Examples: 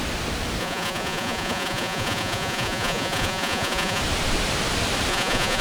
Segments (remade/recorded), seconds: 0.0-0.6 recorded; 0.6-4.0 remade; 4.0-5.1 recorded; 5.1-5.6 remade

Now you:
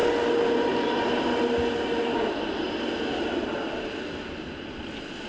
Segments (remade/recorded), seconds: 0.0-5.3 recorded